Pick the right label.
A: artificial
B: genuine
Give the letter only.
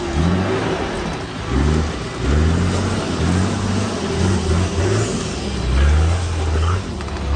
B